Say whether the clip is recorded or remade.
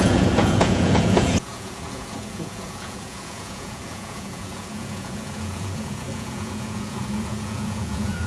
remade